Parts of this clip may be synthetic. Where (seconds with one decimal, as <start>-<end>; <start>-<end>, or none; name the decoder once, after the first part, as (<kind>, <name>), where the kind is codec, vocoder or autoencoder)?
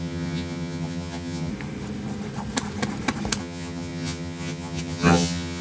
0.0-1.5 (vocoder, HiFi-GAN); 3.4-5.6